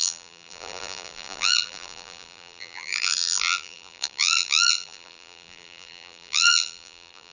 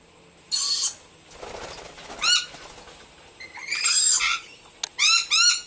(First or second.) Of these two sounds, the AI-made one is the first